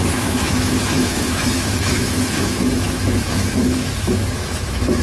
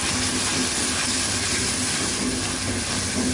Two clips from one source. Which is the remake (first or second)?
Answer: first